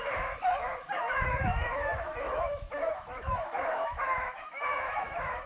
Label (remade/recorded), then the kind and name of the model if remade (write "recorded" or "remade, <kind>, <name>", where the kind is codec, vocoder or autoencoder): remade, autoencoder, DAC-VAE